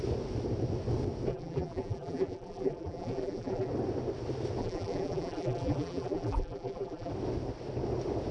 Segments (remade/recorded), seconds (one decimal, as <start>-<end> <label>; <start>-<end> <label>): 0.0-1.3 recorded; 1.3-3.7 remade; 3.7-4.6 recorded; 4.6-7.1 remade; 7.1-8.3 recorded